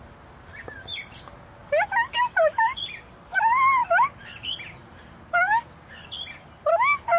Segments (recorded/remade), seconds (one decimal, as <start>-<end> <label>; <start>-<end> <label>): 0.0-7.2 recorded